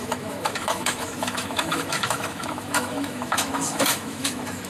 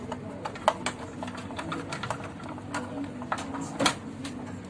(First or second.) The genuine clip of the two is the second